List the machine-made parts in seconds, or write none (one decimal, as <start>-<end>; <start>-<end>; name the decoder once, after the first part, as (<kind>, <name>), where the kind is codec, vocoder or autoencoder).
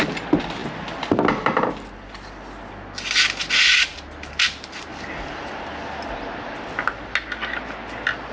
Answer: none